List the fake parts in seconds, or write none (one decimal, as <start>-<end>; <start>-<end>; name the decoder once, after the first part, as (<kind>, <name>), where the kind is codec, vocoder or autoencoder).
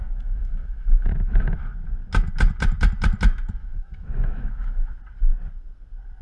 0.0-1.6 (autoencoder, DAC-VAE); 3.6-4.9